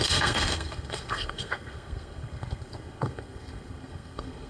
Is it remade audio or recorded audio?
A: remade